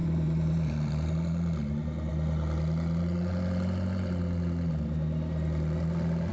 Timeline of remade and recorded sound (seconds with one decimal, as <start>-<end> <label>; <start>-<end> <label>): 0.0-1.1 remade; 1.1-6.3 recorded